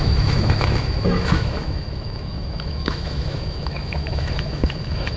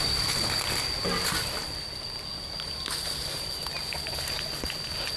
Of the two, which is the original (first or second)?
second